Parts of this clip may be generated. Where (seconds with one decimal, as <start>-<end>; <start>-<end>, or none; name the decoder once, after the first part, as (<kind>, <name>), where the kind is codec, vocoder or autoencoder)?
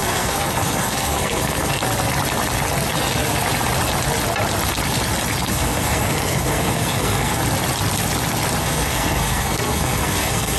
0.0-1.8 (codec, SNAC); 5.5-7.4; 8.6-10.6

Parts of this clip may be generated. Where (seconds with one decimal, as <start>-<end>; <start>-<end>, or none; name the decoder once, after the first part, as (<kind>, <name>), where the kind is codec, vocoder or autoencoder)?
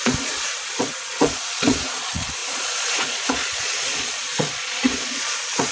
0.0-5.7 (vocoder, Vocos)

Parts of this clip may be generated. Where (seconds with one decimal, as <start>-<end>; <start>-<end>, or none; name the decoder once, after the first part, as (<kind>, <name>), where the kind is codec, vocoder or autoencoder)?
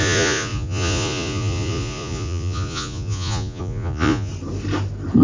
0.0-4.3 (vocoder, Vocos)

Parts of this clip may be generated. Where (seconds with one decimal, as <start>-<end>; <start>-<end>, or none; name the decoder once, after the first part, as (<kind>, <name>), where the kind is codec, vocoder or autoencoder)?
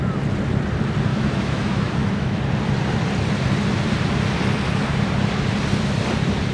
1.1-2.4 (autoencoder, DAC-VAE)